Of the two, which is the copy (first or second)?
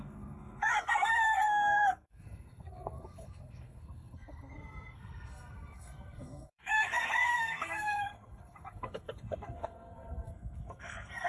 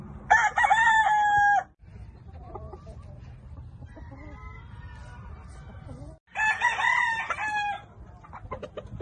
first